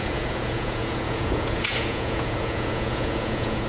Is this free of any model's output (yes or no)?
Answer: no